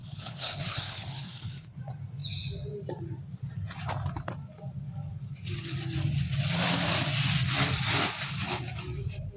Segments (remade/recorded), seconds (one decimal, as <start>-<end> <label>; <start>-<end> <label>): 0.0-1.8 remade; 1.8-9.4 recorded